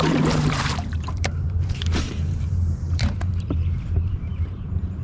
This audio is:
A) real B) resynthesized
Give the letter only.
B